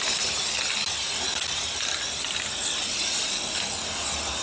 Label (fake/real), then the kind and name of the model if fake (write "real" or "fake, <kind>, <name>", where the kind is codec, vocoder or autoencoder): real